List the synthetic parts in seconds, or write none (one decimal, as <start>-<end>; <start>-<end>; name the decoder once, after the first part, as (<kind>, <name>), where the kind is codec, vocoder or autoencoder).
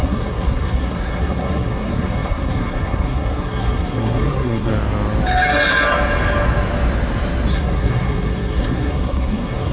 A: 0.0-4.7 (codec, SNAC); 7.5-9.7